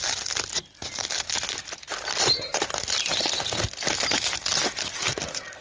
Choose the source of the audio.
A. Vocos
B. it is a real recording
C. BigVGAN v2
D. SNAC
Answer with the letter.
B